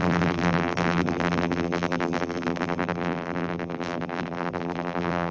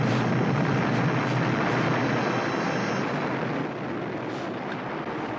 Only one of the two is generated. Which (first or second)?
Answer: first